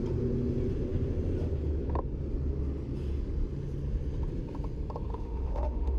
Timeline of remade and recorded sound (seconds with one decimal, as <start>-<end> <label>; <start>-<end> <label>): 0.0-5.1 recorded; 5.1-6.0 remade